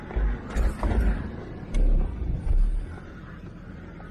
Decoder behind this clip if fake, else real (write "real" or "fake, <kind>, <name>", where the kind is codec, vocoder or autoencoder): real